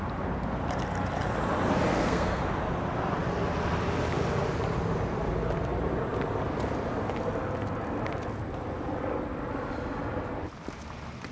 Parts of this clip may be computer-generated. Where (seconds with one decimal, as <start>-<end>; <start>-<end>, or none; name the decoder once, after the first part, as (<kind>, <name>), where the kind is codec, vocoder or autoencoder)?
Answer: 1.9-2.4 (codec, SNAC)